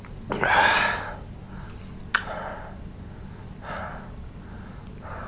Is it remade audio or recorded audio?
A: recorded